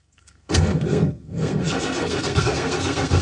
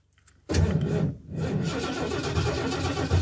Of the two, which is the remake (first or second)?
first